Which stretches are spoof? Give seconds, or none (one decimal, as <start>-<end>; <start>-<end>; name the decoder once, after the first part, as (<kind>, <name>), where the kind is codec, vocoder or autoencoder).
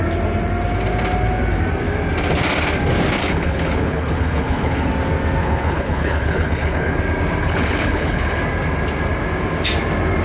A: 3.2-4.9 (codec, HILCodec); 5.4-7.0; 7.4-8.4